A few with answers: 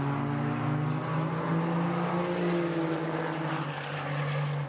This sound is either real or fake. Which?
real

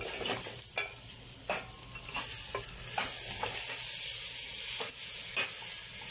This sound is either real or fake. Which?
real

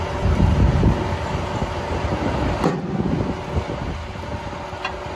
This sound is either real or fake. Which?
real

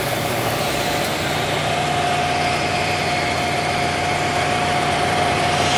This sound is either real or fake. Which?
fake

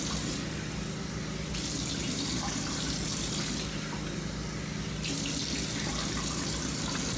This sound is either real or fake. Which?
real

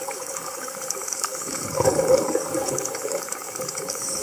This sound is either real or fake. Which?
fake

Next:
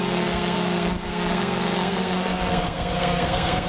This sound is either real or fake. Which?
fake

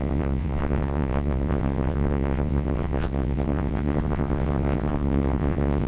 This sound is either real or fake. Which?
fake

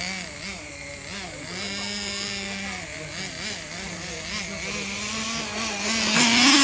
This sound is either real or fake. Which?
real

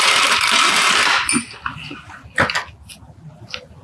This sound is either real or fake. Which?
real